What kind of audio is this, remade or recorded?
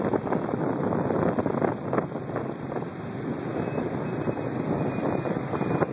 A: recorded